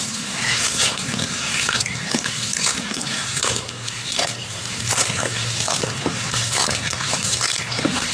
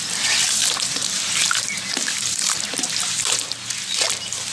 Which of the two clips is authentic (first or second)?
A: second